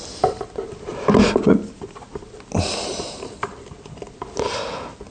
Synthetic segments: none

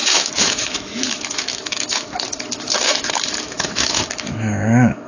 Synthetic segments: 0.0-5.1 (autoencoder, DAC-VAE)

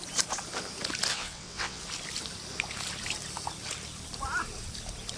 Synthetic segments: 1.1-1.8 (vocoder, WaveNeXt)

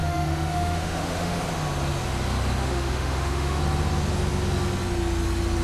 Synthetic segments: 0.0-1.4 (autoencoder, DAC-VAE); 2.6-3.6

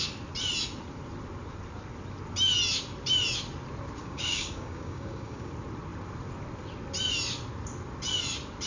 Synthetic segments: 4.0-5.5 (codec, DAC)

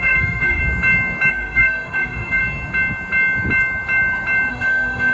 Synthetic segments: 0.0-0.6 (autoencoder, DAC-VAE); 1.3-2.4; 4.5-5.1

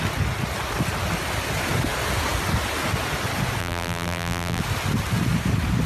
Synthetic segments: 3.6-4.6 (vocoder, BigVGAN v2)

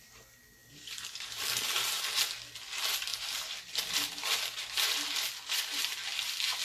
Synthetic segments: 0.6-1.6 (vocoder, BigVGAN v2)